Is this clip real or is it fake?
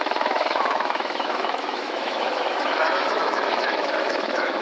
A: fake